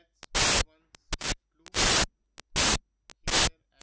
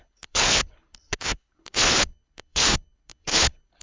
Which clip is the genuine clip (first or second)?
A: first